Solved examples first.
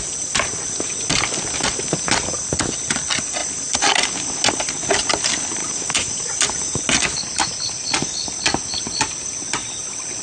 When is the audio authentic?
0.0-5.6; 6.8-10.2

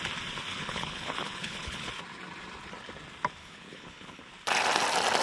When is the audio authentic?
0.0-0.5; 1.9-3.4; 4.3-5.2